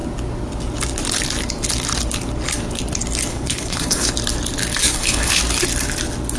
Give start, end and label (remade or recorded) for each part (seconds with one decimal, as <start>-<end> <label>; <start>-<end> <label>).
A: 0.0-3.3 recorded; 3.3-4.1 remade; 4.1-4.8 recorded; 4.8-5.4 remade; 5.4-6.4 recorded